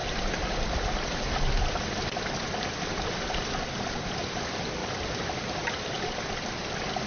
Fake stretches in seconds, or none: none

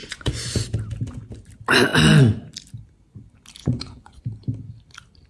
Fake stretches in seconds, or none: 0.0-0.6 (vocoder, Vocos); 3.6-4.2

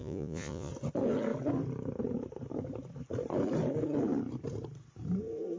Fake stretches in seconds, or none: 0.0-0.7 (vocoder, Vocos)

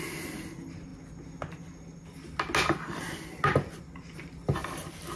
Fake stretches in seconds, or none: none

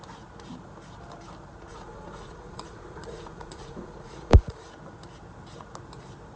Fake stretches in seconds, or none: 1.7-4.7 (vocoder, Vocos)

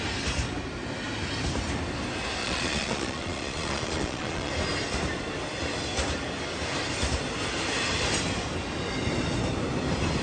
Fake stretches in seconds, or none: 2.4-4.5 (vocoder, Vocos)

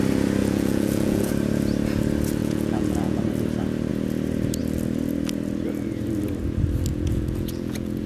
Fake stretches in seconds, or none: 0.4-1.3 (vocoder, Vocos); 2.4-3.2; 6.9-8.1

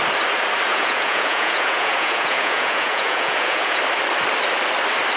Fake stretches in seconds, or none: 0.7-3.8 (vocoder, Vocos)